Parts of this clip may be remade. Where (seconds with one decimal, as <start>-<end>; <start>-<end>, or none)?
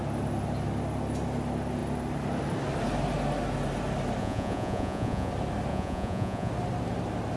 4.2-5.3; 5.7-6.5